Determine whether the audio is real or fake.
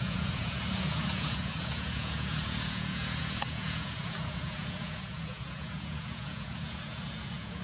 fake